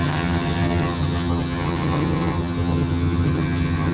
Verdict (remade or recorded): remade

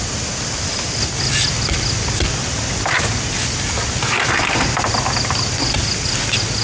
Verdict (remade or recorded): recorded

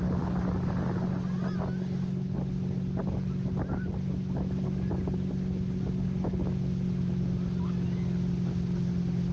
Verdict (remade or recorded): recorded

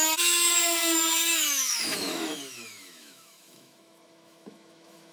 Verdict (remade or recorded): remade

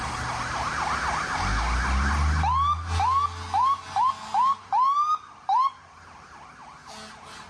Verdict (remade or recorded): recorded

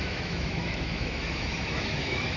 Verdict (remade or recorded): remade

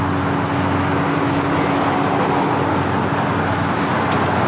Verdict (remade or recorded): recorded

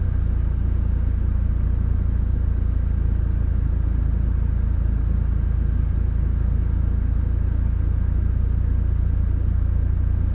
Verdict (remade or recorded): recorded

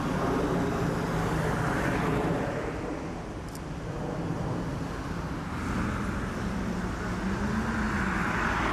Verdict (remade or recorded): recorded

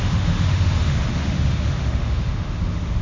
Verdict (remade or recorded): remade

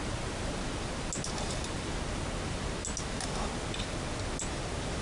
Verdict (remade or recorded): recorded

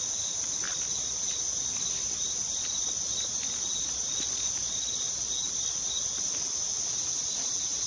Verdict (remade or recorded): recorded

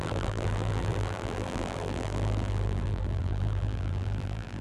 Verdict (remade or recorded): remade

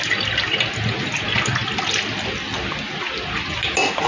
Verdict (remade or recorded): recorded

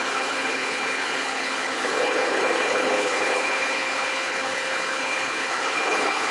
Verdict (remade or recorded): remade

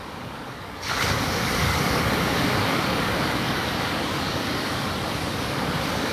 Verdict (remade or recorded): remade